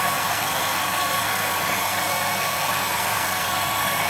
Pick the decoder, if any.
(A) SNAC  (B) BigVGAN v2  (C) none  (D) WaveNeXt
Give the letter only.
A